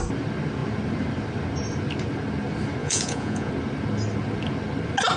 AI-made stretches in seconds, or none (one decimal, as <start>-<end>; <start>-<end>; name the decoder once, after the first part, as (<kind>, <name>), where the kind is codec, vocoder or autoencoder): 2.8-3.5 (vocoder, Vocos)